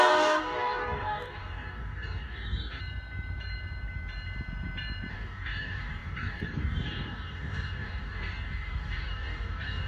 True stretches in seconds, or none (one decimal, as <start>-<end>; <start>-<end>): 2.8-5.1